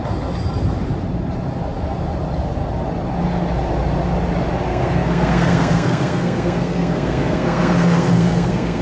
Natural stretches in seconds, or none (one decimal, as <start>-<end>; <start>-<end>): 0.0-4.7